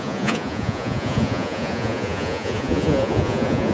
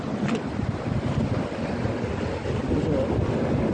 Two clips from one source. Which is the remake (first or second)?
first